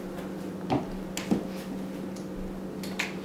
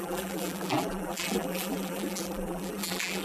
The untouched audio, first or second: first